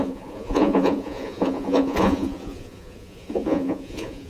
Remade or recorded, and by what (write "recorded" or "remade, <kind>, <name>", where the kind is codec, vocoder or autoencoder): remade, vocoder, Vocos